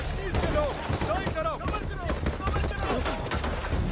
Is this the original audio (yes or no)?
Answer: yes